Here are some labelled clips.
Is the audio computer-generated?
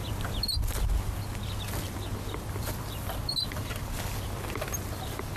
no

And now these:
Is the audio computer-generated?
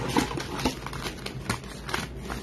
no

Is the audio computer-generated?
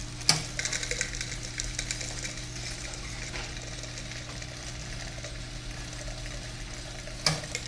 no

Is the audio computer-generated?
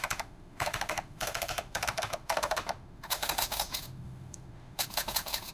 yes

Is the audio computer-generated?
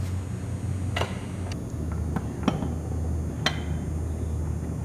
no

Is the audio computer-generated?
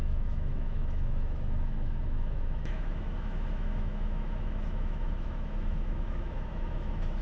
yes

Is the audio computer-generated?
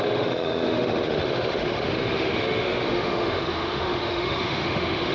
yes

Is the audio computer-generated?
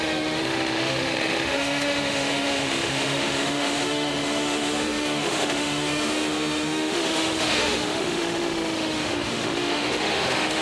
yes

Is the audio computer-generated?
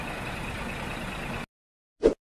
no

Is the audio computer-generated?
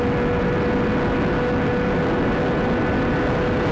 no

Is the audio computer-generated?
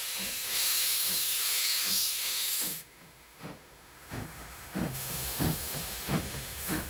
yes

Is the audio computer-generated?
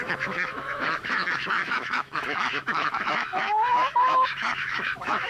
yes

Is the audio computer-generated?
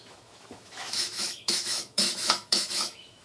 yes